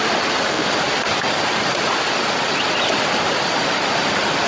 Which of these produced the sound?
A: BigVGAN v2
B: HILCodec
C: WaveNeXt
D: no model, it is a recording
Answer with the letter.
D